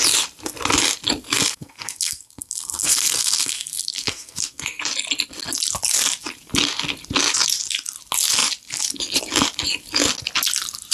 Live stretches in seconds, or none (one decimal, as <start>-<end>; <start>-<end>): 0.0-1.5; 4.8-10.9